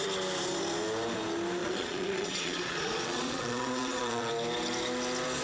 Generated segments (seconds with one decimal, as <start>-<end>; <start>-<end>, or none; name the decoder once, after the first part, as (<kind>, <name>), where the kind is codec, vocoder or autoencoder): 1.6-4.3 (vocoder, Vocos)